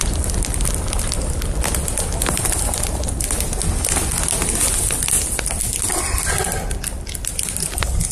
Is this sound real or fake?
real